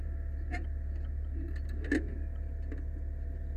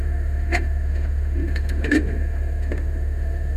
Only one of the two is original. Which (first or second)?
first